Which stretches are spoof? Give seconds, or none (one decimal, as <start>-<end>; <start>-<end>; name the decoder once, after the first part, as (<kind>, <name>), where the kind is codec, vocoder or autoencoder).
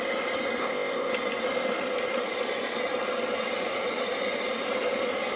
0.6-1.1 (codec, ZipCodec)